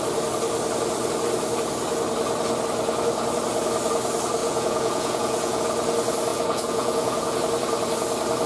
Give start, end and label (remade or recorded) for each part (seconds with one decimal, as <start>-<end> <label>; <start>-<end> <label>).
0.0-4.4 recorded; 4.4-5.6 remade; 5.6-6.3 recorded; 6.3-7.4 remade; 7.4-8.5 recorded